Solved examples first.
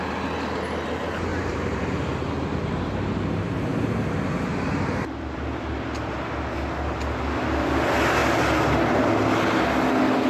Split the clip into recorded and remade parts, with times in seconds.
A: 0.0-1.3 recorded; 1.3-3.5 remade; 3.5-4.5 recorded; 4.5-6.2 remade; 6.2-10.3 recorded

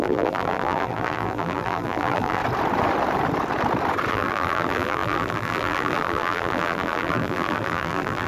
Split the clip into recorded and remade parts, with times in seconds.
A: 0.0-2.4 remade; 2.4-4.1 recorded; 4.1-8.3 remade

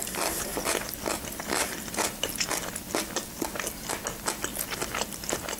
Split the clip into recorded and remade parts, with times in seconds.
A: 0.0-5.6 recorded

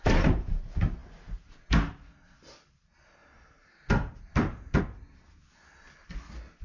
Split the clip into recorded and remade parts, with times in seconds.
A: 0.0-3.2 recorded; 3.2-4.8 remade; 4.8-6.6 recorded

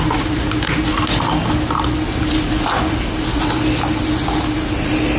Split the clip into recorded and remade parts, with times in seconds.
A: 0.0-5.2 recorded